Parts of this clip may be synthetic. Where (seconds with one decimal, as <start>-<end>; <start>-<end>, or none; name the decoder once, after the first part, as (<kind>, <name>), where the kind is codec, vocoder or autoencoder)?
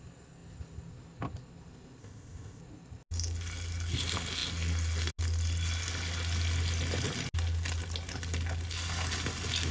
2.0-2.6 (codec, ZipCodec)